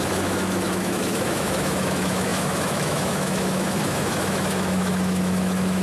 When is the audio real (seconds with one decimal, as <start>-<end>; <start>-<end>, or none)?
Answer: none